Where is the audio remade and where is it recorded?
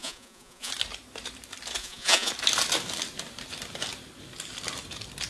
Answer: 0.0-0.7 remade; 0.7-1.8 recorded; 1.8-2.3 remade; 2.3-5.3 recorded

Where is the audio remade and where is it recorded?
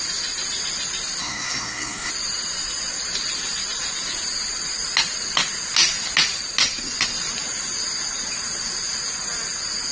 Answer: 0.0-1.2 recorded; 1.2-2.1 remade; 2.1-9.9 recorded